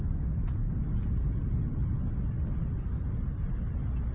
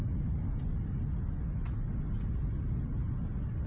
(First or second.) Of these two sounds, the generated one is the first